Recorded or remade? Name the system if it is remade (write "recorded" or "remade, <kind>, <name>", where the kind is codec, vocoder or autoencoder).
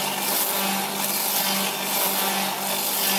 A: recorded